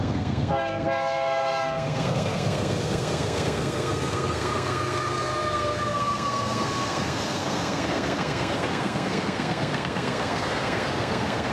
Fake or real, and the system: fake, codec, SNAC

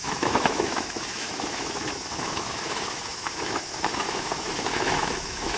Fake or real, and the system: fake, autoencoder, DAC-VAE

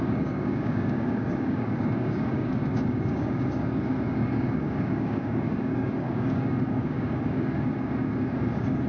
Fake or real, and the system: fake, codec, DAC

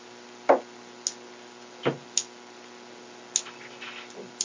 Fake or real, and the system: real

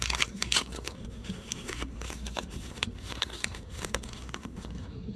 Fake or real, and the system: fake, codec, SNAC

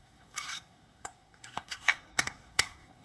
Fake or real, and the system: fake, codec, SNAC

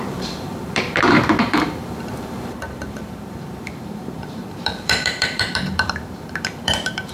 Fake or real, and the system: fake, vocoder, BigVGAN v2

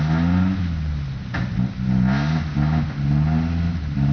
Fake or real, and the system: real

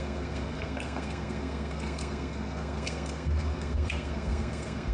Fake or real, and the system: fake, codec, SNAC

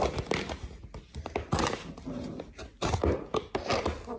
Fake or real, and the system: real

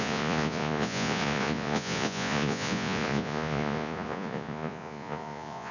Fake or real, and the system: fake, vocoder, Vocos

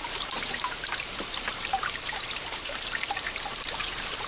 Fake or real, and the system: fake, vocoder, BigVGAN v2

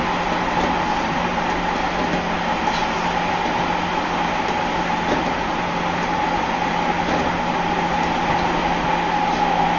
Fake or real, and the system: real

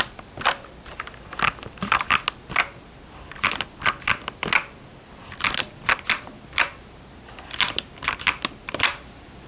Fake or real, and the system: real